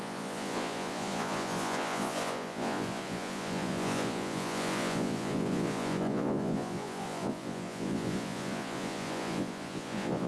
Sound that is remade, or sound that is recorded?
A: remade